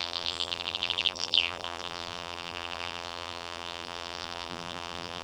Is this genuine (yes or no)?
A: no